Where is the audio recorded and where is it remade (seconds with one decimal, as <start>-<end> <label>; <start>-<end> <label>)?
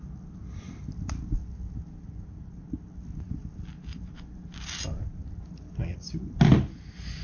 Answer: 0.0-7.2 recorded